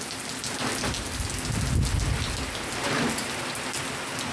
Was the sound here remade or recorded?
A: recorded